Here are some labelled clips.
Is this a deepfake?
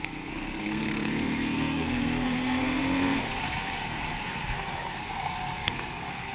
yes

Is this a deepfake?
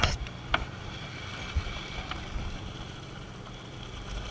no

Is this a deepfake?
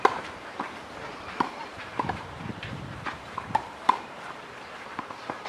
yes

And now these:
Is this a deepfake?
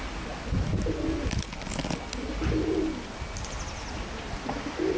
no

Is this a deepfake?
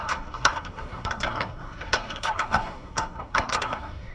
yes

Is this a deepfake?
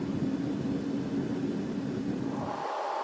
no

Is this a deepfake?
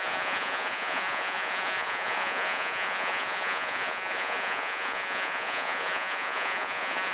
yes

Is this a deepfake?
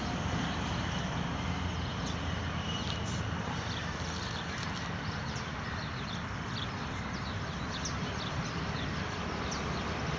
no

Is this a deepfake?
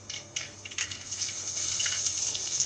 yes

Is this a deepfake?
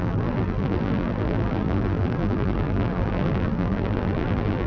yes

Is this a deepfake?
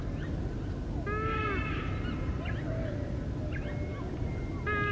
no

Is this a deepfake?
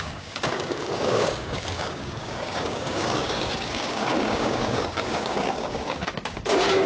yes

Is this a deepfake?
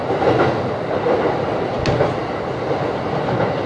no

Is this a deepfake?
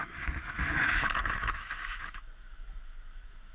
yes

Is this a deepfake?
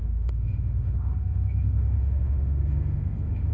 yes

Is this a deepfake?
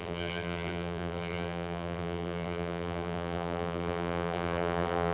yes